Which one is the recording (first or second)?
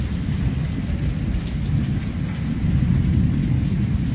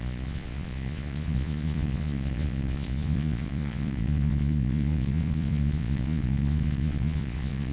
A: first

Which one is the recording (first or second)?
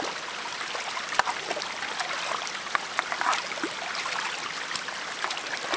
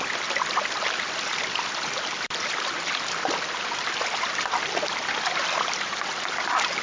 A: first